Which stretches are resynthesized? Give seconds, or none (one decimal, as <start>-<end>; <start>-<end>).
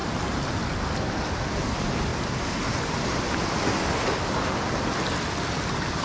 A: none